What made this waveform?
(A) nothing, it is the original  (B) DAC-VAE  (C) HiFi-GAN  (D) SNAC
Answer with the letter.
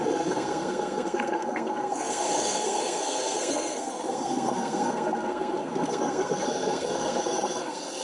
D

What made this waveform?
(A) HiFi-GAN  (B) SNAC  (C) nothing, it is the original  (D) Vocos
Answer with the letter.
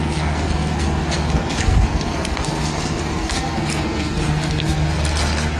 B